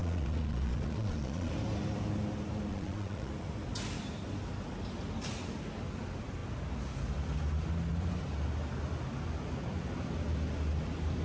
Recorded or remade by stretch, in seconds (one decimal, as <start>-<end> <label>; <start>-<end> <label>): 0.0-1.5 remade; 1.5-2.7 recorded; 2.7-3.3 remade; 3.3-11.2 recorded